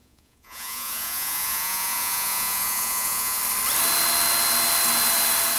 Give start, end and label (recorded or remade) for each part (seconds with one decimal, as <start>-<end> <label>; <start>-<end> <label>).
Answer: 0.0-3.4 remade; 3.4-5.6 recorded